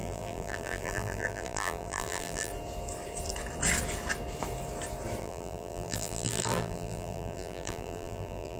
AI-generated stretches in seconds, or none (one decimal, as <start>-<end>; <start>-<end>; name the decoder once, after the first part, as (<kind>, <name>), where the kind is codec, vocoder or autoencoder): 0.0-2.5 (vocoder, BigVGAN v2); 5.2-8.6